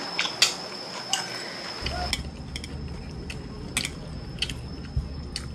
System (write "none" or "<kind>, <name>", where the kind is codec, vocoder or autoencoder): none